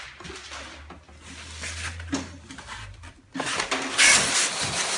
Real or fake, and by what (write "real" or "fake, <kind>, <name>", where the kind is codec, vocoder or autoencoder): real